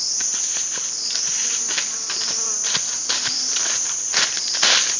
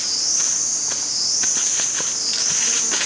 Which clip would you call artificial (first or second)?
first